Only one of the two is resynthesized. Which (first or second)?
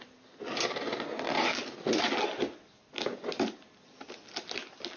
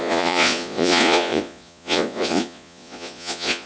second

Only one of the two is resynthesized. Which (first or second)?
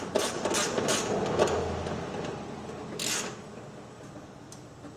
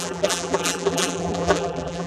second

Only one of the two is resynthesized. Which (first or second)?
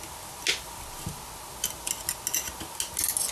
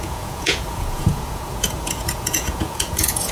second